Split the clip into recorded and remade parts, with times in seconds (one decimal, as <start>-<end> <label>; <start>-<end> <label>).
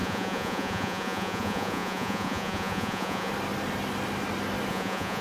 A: 0.0-3.3 remade; 3.3-4.7 recorded; 4.7-5.2 remade